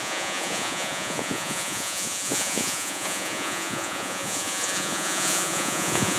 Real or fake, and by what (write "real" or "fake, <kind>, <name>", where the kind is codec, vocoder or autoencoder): fake, vocoder, Vocos